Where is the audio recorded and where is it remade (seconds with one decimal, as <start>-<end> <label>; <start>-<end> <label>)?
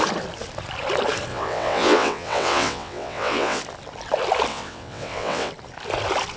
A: 0.0-1.3 recorded; 1.3-3.6 remade; 3.6-4.5 recorded; 4.5-5.5 remade; 5.5-6.4 recorded